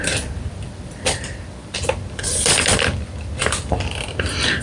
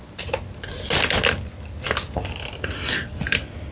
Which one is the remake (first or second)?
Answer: first